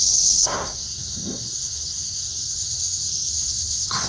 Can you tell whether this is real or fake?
fake